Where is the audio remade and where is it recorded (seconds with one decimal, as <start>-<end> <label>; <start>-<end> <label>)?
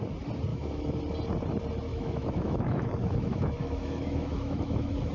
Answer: 0.0-0.5 recorded; 0.5-1.0 remade; 1.0-1.9 recorded; 1.9-5.1 remade